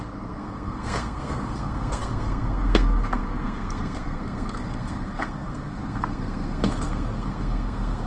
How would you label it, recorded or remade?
remade